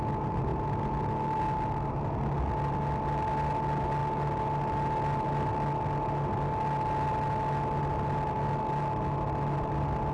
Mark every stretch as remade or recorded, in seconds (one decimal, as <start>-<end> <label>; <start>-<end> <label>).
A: 0.0-10.1 recorded